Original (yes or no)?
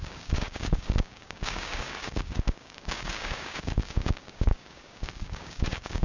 no